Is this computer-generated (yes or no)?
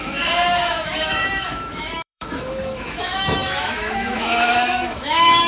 yes